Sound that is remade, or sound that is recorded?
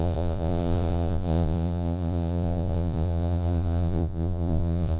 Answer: remade